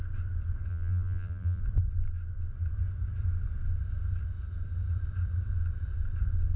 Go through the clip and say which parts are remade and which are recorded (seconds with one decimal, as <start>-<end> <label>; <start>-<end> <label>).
0.0-0.7 recorded; 0.7-1.6 remade; 1.6-6.6 recorded